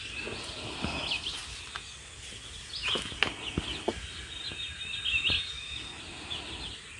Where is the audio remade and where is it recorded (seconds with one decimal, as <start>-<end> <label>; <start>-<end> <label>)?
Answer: 0.0-7.0 recorded

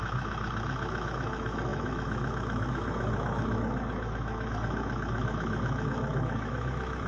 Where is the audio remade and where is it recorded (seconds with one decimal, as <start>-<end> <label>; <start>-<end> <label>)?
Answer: 0.0-7.1 remade